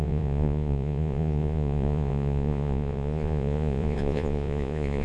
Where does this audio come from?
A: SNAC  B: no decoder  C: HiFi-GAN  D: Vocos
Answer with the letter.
D